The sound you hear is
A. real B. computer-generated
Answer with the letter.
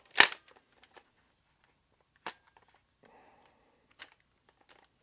A